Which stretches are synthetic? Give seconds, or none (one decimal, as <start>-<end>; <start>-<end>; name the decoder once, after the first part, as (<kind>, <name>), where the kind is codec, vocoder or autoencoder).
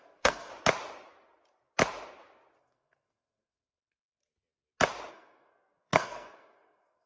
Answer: 0.0-0.5 (codec, SNAC); 2.6-4.2; 5.1-7.1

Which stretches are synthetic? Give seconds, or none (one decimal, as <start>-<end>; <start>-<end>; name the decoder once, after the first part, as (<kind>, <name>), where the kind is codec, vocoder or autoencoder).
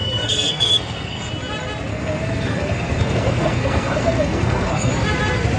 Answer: 0.0-1.3 (codec, SNAC); 1.9-4.9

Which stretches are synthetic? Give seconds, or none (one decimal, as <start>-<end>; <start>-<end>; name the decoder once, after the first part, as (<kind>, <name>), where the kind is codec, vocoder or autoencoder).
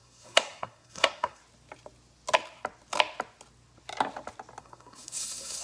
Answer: 0.0-1.4 (codec, SNAC); 4.6-5.6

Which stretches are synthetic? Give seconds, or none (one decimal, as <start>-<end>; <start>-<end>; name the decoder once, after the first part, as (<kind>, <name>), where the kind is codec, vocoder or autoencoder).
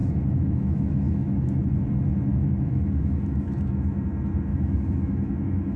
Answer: 0.0-1.6 (autoencoder, DAC-VAE); 2.3-4.0; 4.5-5.8